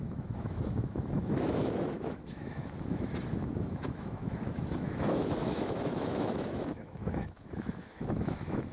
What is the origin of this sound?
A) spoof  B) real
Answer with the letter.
A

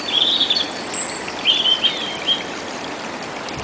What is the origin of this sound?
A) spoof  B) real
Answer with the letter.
B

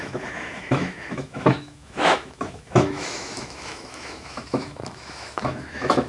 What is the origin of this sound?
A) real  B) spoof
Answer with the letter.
B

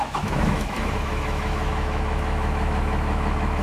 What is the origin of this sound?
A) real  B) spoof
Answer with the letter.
B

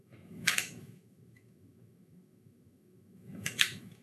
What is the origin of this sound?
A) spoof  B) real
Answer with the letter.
A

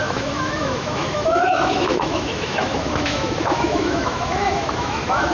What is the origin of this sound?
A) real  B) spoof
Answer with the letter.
B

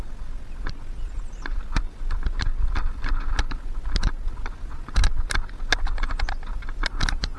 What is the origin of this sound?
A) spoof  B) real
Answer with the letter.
B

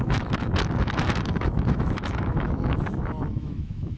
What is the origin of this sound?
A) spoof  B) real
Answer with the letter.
A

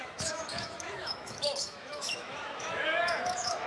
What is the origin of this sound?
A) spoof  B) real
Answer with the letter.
A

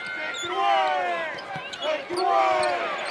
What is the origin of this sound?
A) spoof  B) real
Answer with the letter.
B